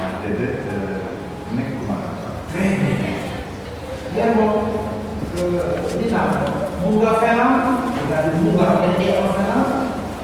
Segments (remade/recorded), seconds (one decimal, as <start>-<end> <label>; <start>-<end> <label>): 0.0-10.2 recorded